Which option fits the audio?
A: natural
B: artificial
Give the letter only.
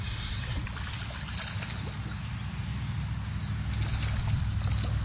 A